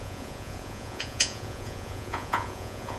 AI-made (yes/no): yes